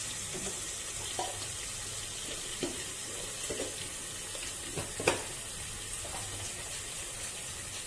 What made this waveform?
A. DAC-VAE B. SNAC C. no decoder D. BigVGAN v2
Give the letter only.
C